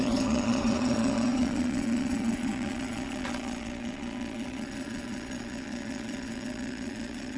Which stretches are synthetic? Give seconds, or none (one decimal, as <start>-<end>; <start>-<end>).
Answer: 0.0-7.4